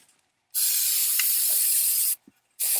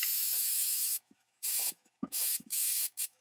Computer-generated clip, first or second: second